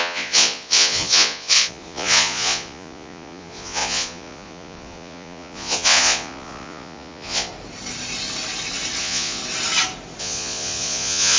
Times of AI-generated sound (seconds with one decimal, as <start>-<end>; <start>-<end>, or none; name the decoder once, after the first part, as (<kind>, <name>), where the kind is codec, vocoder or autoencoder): 0.0-7.5 (vocoder, Vocos); 9.0-9.4; 10.2-11.4